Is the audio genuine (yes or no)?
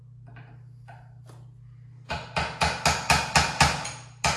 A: yes